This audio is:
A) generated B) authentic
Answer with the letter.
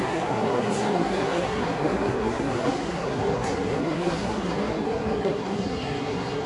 A